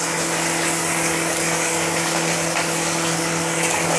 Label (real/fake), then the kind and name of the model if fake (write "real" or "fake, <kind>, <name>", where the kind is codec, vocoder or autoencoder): fake, codec, DAC